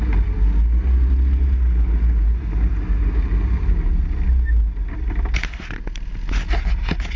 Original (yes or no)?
yes